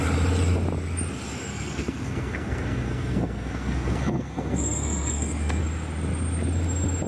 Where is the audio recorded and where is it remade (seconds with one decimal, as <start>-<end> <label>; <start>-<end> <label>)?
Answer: 0.0-1.4 recorded; 1.4-5.6 remade; 5.6-7.1 recorded